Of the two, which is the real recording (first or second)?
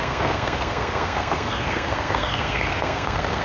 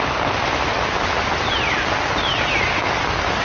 second